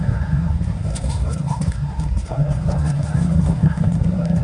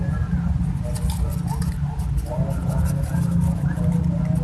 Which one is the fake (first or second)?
first